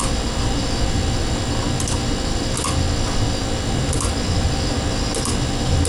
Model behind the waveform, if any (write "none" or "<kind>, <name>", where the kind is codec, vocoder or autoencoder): none